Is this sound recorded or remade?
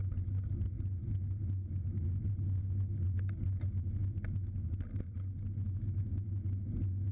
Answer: recorded